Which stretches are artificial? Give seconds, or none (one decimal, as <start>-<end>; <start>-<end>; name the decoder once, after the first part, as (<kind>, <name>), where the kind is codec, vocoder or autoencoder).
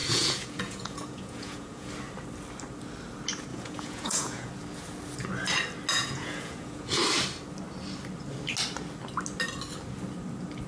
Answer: 0.0-1.9 (vocoder, Vocos); 3.5-4.5; 5.9-7.0